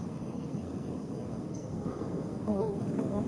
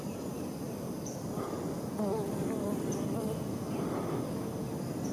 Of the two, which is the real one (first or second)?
second